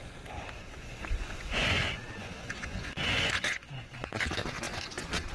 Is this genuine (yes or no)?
no